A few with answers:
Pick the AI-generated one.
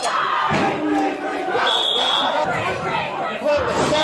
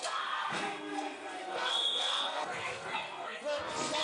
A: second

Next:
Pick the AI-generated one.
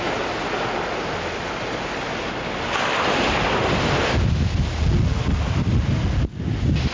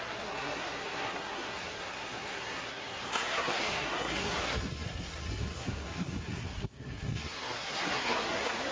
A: second